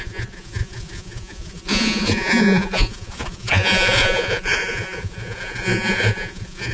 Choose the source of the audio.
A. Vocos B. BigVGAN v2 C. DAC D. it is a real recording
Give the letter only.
A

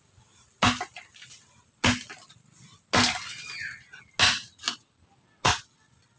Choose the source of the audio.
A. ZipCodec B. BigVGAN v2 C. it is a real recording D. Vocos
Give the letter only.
C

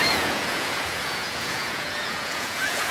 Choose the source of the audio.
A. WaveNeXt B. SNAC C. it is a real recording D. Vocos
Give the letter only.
D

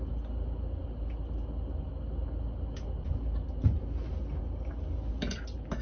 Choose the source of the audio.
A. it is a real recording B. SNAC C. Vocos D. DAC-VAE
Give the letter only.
A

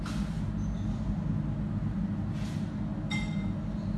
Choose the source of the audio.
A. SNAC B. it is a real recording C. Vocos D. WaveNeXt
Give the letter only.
B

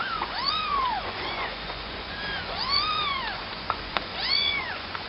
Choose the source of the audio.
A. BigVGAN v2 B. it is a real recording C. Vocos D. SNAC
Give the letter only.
C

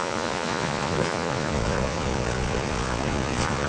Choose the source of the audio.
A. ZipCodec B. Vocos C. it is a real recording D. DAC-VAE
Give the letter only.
B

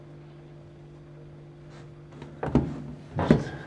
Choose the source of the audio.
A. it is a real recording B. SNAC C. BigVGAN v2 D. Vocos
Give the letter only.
A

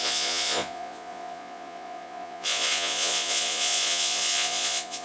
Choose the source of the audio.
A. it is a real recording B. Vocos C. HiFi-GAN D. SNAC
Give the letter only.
B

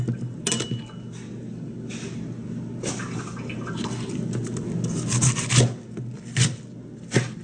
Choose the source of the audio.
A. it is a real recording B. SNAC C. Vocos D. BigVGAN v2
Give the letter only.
A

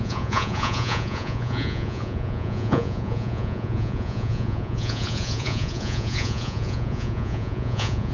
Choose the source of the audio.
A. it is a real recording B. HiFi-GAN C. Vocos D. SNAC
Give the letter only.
C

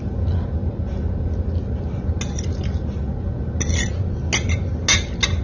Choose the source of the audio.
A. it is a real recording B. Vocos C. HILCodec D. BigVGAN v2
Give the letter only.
A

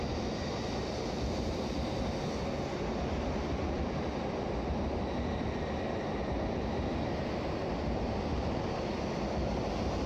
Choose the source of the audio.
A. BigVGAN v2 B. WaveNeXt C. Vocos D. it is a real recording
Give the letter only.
D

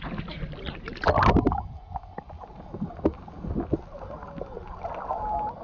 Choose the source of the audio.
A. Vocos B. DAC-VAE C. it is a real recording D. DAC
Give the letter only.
C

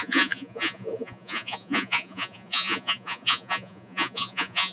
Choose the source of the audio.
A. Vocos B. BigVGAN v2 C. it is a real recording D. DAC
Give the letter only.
A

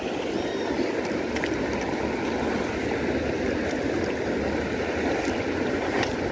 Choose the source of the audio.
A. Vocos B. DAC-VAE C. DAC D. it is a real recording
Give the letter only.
D